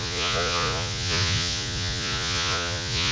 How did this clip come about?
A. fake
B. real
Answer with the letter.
A